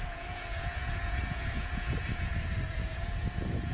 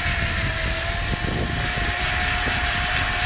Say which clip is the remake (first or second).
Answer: first